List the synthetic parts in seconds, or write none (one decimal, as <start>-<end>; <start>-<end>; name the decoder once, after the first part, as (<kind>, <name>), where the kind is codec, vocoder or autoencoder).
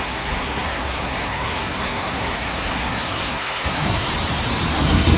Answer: 0.0-4.1 (codec, SNAC); 4.7-5.2